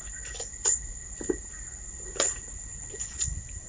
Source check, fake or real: real